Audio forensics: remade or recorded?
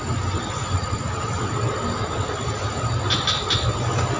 recorded